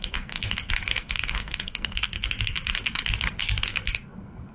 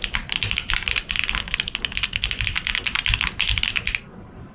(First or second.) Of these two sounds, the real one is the second